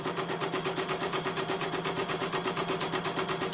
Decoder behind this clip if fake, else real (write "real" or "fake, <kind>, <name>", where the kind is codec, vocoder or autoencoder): fake, vocoder, BigVGAN v2